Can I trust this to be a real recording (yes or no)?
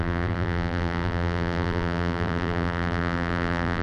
no